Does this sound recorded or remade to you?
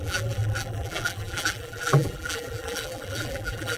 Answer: remade